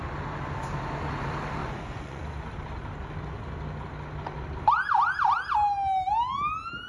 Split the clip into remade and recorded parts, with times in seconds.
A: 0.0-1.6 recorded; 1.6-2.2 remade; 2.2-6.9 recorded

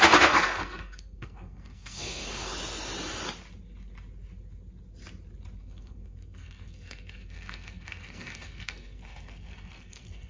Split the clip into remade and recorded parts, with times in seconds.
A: 0.0-2.5 remade; 2.5-5.6 recorded; 5.6-10.3 remade

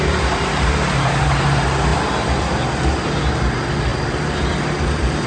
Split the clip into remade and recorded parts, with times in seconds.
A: 0.0-3.9 recorded; 3.9-4.5 remade; 4.5-5.3 recorded

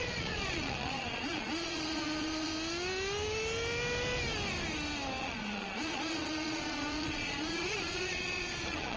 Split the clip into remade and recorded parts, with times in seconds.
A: 0.0-2.5 remade; 2.5-5.2 recorded; 5.2-9.0 remade

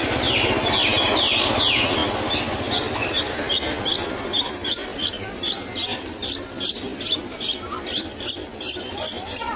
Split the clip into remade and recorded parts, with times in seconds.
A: 0.0-9.6 recorded

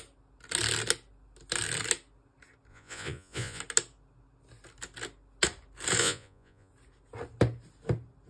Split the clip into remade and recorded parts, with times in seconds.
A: 0.0-2.7 recorded; 2.7-3.6 remade; 3.6-6.0 recorded; 6.0-6.7 remade; 6.7-8.3 recorded

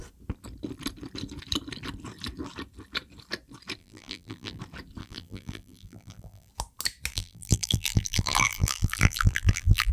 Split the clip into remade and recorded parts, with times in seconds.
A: 0.0-3.8 recorded; 3.8-4.6 remade; 4.6-5.0 recorded; 5.0-6.5 remade; 6.5-7.1 recorded; 7.1-9.9 remade

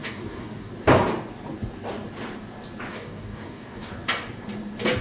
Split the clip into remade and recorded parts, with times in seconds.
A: 0.0-0.7 remade; 0.7-2.9 recorded; 2.9-3.9 remade; 3.9-5.0 recorded